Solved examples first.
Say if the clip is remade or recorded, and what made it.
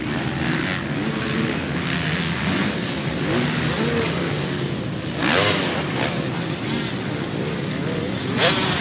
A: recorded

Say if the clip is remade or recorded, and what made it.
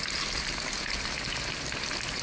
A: recorded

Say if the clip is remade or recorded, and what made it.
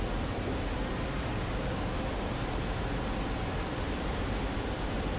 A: remade, vocoder, BigVGAN v2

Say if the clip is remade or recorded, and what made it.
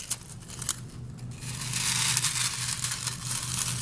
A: recorded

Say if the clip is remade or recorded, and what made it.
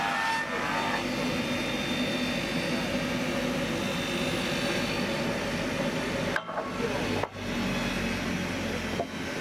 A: recorded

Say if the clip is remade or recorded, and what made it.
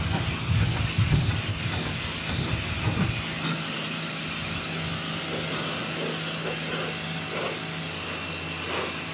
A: recorded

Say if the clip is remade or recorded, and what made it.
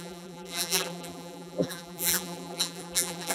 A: remade, vocoder, BigVGAN v2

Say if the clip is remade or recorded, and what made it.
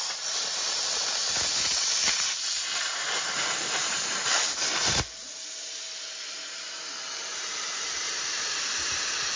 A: remade, vocoder, BigVGAN v2